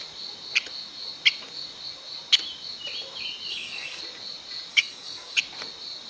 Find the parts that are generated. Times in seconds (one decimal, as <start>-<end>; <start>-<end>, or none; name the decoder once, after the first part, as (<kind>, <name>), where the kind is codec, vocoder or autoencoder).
3.5-4.0 (codec, DAC); 4.7-5.4